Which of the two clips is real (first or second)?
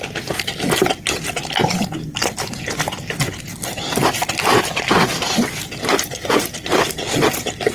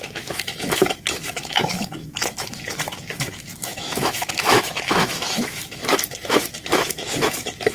first